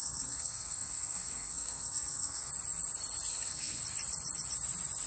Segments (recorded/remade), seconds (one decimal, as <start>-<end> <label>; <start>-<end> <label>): 0.0-2.5 remade; 2.5-3.3 recorded; 3.3-3.8 remade; 3.8-5.1 recorded